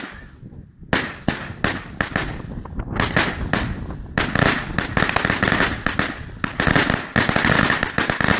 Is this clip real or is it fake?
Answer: real